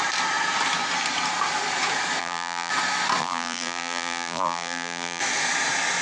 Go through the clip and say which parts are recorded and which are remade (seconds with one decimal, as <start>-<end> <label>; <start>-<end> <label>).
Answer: 0.0-2.2 recorded; 2.2-2.7 remade; 2.7-3.2 recorded; 3.2-5.2 remade; 5.2-6.0 recorded